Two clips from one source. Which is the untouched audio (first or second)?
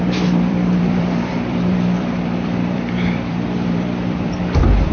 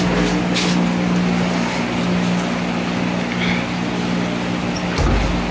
second